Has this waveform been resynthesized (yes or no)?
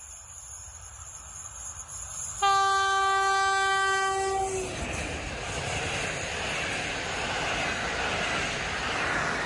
no